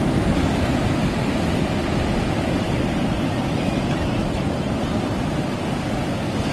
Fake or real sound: real